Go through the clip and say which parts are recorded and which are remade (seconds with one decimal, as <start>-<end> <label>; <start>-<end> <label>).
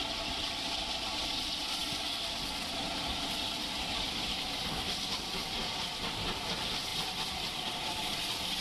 0.0-8.6 recorded